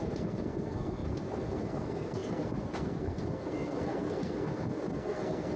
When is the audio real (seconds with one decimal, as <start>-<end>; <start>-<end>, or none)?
none